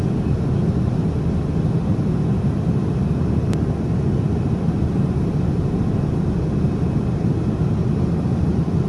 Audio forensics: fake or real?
real